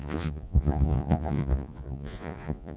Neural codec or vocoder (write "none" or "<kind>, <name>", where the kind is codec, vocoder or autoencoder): vocoder, Vocos